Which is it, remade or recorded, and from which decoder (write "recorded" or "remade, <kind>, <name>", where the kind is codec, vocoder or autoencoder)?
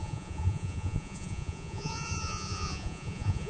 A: remade, vocoder, Vocos